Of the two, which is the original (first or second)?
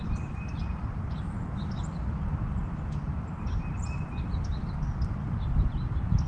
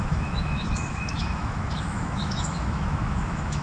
first